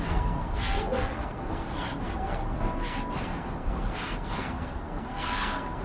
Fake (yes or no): yes